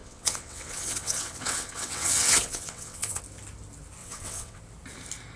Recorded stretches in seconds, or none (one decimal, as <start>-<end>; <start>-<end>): 3.2-4.0; 4.6-5.4